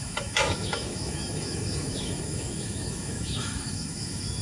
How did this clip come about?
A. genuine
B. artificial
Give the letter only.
B